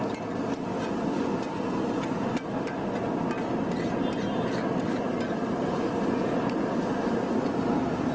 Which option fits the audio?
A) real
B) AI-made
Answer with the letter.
A